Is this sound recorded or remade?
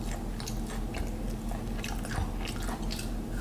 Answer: recorded